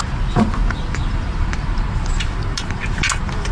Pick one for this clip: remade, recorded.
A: recorded